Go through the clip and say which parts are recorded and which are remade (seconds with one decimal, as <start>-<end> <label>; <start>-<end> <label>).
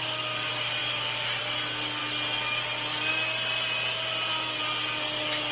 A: 0.0-5.5 recorded